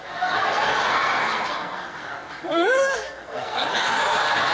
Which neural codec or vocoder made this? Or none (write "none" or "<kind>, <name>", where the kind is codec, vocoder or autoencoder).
codec, SNAC